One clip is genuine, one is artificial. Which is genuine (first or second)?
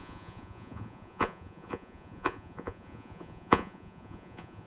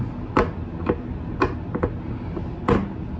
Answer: second